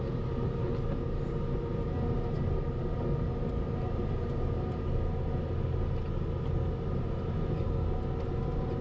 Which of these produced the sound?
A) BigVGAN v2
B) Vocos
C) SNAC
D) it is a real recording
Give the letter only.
D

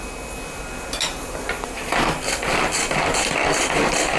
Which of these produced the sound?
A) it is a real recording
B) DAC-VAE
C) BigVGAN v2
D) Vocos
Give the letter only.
A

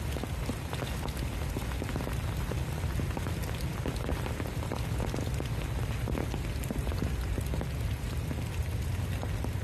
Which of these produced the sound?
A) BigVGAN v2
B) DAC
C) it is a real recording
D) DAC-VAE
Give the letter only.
C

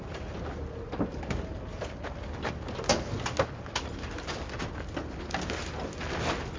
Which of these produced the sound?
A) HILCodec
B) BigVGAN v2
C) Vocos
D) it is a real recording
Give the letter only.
D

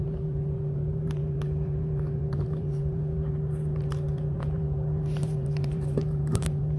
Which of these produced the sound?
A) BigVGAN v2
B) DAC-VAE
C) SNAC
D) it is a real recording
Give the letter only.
A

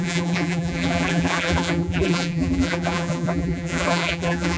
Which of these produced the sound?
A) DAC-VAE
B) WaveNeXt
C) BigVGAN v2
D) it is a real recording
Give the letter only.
C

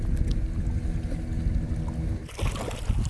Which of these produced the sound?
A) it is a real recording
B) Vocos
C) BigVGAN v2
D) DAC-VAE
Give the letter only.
A